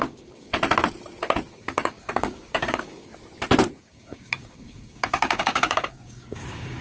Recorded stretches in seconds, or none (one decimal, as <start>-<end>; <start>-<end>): 0.5-1.5; 3.1-3.8